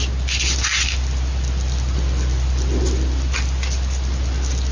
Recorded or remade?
recorded